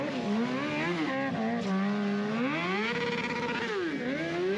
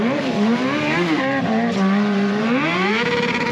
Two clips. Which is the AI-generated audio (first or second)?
second